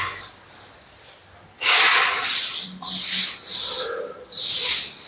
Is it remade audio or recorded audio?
recorded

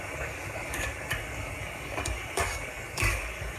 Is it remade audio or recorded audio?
remade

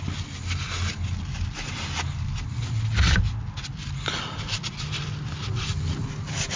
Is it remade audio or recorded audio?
recorded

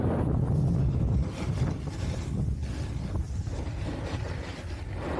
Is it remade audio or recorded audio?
recorded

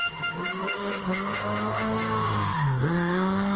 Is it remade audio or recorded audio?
remade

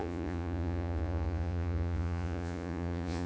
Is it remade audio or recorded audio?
remade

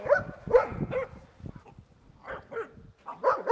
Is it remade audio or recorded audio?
recorded